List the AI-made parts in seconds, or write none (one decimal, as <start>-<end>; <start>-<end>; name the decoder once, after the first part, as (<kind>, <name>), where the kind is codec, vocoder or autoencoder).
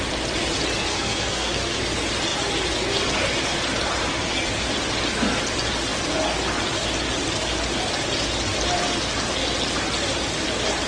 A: 0.9-1.8 (codec, SNAC)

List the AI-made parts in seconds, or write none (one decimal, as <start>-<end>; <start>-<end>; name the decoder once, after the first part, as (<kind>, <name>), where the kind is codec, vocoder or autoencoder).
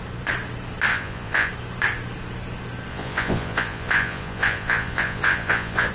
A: 0.9-1.5 (vocoder, Vocos); 2.9-5.9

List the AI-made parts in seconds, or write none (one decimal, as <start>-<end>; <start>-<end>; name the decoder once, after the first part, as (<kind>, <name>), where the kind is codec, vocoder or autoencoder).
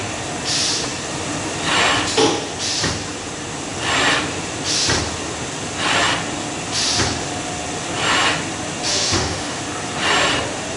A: 8.9-9.6 (autoencoder, DAC-VAE)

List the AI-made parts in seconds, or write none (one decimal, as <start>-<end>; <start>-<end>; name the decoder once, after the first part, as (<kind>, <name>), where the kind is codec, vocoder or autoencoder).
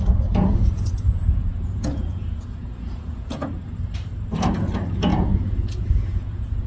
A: 0.5-3.5 (vocoder, Vocos); 5.1-6.7